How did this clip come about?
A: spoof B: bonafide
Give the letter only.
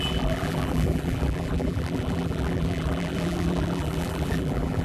A